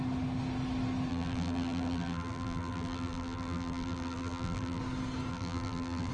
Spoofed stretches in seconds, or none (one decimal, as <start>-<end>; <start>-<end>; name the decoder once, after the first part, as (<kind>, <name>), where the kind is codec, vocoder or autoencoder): 1.1-4.8 (vocoder, BigVGAN v2); 5.3-6.1